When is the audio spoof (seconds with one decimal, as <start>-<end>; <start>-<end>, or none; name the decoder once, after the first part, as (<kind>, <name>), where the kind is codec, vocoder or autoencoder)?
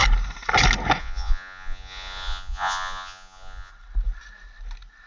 1.0-3.7 (vocoder, Vocos)